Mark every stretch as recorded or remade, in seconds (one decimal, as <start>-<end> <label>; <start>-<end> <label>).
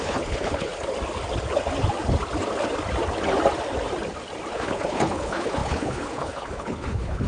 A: 0.0-0.7 remade; 0.7-4.5 recorded; 4.5-7.3 remade